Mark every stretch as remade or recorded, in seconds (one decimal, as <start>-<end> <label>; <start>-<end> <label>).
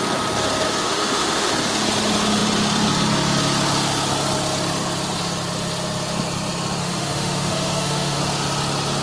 0.0-0.8 recorded; 0.8-1.5 remade; 1.5-6.8 recorded; 6.8-8.2 remade; 8.2-9.0 recorded